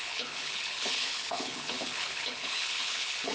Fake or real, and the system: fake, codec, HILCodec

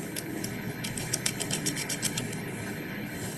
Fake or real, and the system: fake, codec, HILCodec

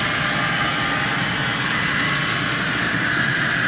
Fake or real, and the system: real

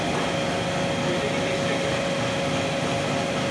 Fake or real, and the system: real